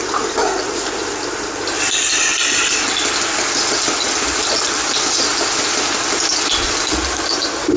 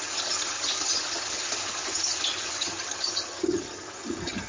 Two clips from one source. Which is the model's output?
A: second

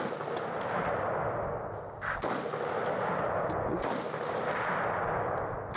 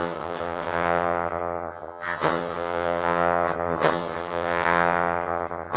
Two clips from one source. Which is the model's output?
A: second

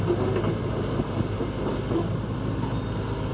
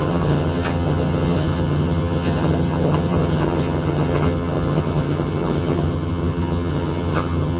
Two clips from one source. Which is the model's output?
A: second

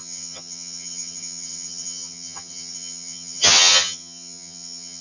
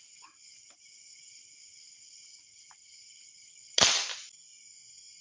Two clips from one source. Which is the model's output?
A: first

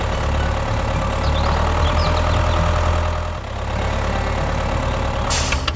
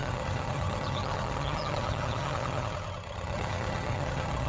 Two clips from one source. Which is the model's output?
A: second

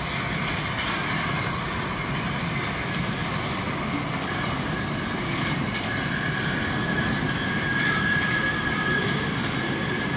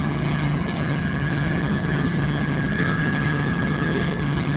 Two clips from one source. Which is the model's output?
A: second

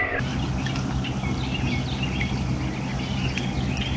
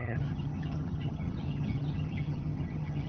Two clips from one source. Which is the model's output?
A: second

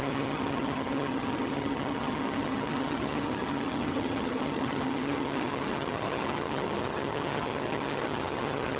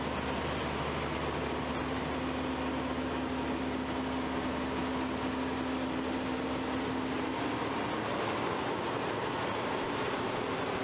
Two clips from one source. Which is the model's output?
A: first